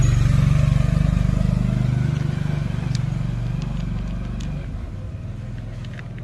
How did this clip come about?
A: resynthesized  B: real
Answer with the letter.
B